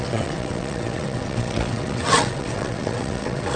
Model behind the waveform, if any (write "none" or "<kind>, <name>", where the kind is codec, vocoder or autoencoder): vocoder, WaveNeXt